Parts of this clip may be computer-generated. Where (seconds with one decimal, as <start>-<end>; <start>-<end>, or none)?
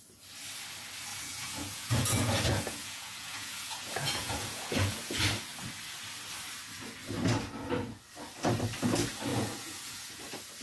1.1-5.2; 9.3-10.2